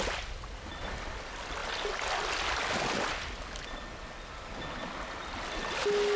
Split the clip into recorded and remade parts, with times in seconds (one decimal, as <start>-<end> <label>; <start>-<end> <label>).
0.0-6.2 recorded